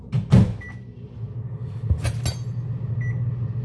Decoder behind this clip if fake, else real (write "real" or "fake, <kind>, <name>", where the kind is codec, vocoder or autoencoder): real